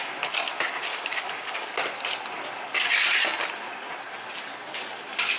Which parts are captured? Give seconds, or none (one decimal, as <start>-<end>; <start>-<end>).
0.0-0.9; 1.7-5.4